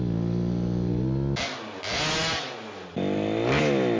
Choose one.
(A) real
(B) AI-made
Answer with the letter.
A